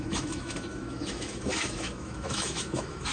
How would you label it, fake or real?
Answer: fake